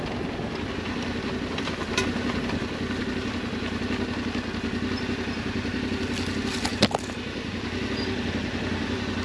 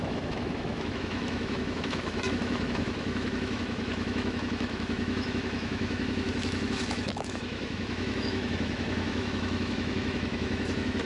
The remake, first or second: second